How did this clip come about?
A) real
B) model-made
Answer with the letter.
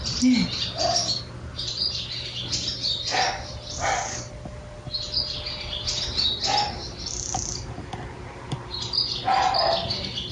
A